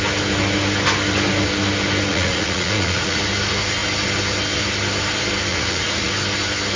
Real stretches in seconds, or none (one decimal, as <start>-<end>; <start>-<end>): 0.0-2.1; 3.2-5.5; 6.1-6.8